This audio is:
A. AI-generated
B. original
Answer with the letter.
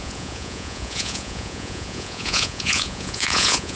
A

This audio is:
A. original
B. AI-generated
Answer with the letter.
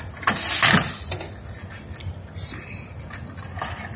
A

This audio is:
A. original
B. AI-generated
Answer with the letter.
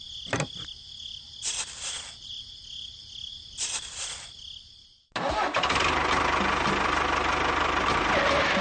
A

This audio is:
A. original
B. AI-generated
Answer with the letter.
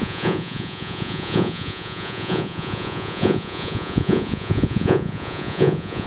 B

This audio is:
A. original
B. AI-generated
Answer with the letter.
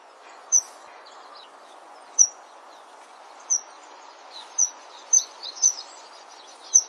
B